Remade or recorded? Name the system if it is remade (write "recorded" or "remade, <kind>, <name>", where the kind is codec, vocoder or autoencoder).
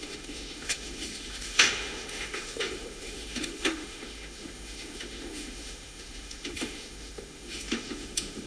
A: remade, autoencoder, DAC-VAE